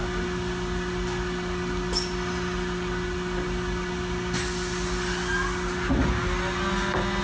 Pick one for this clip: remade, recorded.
recorded